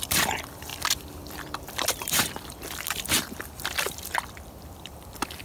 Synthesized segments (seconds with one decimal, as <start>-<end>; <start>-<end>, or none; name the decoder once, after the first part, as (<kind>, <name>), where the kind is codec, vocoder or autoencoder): 0.0-5.4 (vocoder, BigVGAN v2)